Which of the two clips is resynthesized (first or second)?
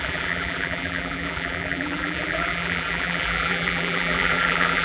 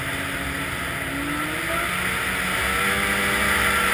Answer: first